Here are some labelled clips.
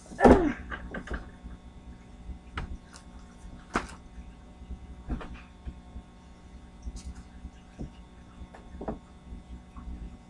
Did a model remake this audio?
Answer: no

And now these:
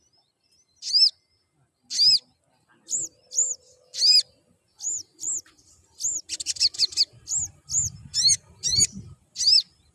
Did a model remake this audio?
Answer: no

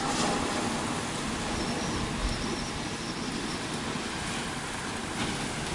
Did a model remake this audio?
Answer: no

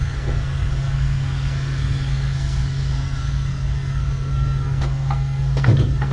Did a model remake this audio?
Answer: yes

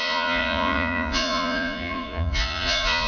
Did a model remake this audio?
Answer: yes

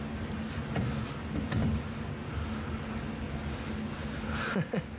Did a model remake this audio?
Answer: no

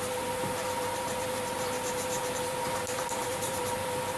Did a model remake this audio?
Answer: no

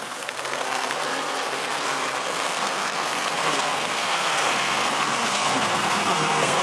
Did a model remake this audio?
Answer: yes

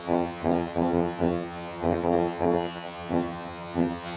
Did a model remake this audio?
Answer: yes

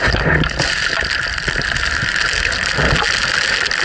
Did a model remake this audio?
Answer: no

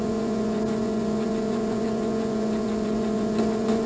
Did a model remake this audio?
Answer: yes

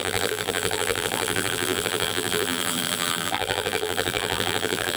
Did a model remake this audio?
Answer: yes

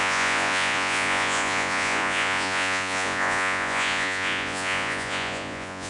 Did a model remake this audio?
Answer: yes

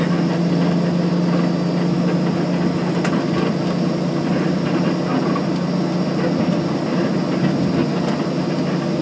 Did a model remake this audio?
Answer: no